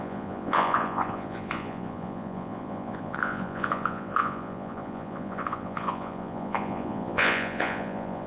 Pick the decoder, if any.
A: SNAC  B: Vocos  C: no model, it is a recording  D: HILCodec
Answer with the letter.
B